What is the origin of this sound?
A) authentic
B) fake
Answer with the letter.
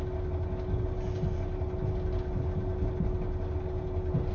A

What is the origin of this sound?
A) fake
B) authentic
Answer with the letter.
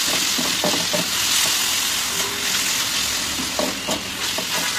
B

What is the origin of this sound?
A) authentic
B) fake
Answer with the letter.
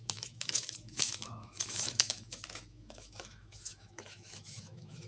B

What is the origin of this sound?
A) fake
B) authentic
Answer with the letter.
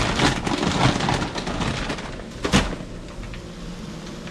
B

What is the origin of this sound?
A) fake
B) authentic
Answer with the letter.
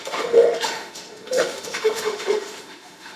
A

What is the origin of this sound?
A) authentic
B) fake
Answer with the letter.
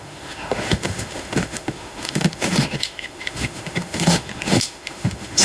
B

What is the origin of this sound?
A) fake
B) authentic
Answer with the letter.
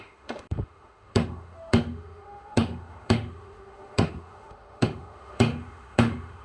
A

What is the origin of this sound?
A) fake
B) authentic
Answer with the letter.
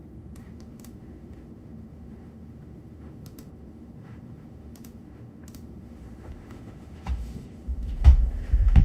A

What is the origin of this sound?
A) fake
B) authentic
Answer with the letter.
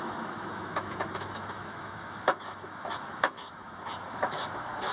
A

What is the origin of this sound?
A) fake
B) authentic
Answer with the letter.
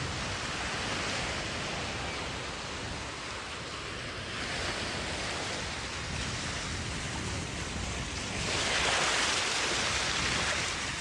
B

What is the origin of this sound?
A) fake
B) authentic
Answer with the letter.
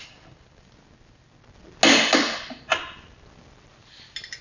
B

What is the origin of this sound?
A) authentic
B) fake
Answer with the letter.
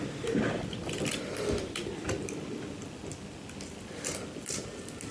A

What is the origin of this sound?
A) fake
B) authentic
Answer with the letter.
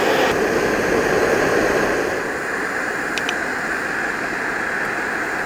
B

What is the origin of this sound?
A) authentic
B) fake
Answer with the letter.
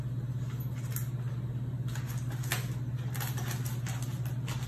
A